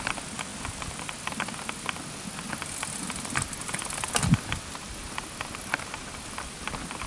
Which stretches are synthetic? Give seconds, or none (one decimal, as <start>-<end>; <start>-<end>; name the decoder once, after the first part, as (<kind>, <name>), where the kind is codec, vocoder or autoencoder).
none